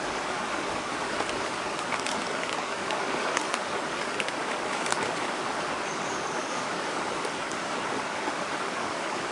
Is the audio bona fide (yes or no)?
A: no